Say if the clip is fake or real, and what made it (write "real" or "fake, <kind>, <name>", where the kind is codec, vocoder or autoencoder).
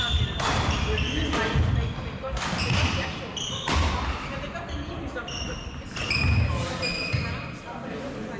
real